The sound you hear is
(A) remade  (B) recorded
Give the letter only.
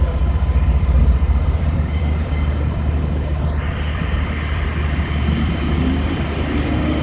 A